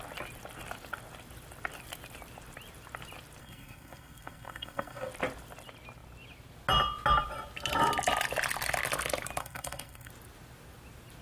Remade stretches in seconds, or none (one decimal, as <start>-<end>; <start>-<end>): 3.4-5.1; 9.4-10.1